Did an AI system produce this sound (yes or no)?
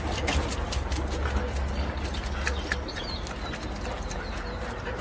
no